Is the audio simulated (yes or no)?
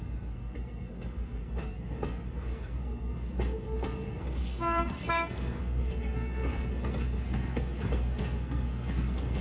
yes